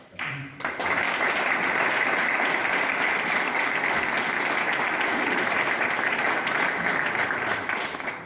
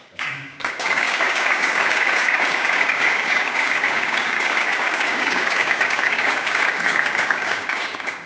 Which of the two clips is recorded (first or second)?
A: first